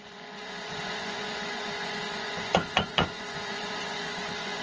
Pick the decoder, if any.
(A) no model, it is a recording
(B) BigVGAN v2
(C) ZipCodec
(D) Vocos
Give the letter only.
D